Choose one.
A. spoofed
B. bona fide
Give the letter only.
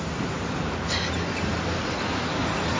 B